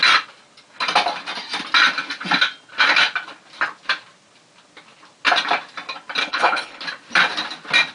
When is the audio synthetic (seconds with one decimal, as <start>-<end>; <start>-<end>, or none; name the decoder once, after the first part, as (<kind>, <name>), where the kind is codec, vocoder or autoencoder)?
6.2-6.8 (codec, HILCodec)